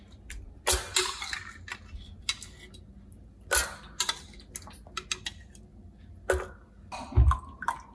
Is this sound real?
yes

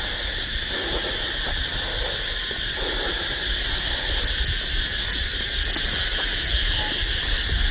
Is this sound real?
yes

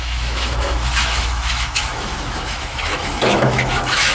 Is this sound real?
no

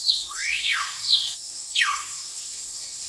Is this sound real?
no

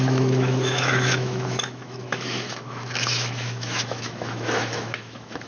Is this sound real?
no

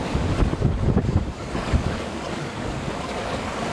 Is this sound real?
no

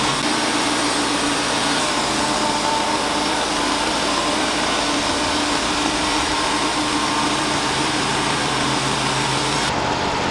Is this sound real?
yes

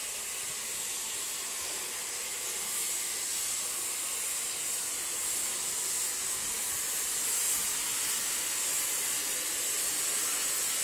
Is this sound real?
yes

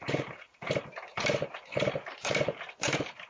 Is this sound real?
no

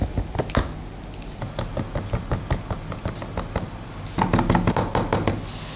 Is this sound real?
yes